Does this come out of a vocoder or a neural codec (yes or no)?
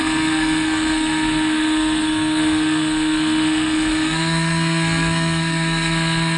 yes